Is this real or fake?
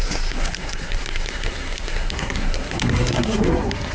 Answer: fake